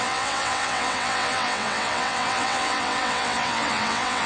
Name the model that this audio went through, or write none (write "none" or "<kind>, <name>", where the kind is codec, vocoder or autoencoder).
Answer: vocoder, WaveNeXt